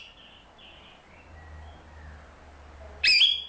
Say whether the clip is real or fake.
real